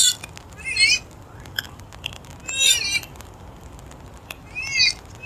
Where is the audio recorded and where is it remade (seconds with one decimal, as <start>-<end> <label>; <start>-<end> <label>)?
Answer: 0.0-5.3 recorded